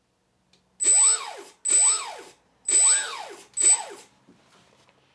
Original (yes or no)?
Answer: yes